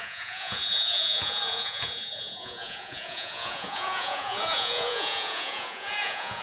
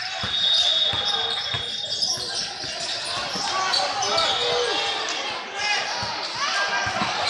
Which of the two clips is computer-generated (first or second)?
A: first